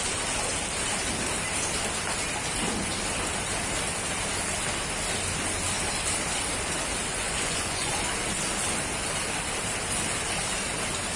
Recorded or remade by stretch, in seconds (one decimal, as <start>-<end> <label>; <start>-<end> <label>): 0.0-7.1 recorded; 7.1-7.9 remade; 7.9-11.2 recorded

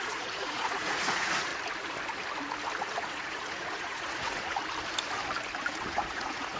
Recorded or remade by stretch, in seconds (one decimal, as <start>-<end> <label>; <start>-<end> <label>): 0.0-1.5 remade; 1.5-3.0 recorded; 3.0-4.6 remade; 4.6-5.9 recorded; 5.9-6.6 remade

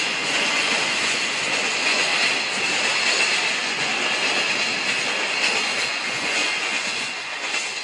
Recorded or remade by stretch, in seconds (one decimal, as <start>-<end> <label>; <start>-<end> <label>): 0.0-2.1 remade; 2.1-3.5 recorded; 3.5-3.9 remade; 3.9-5.6 recorded; 5.6-7.8 remade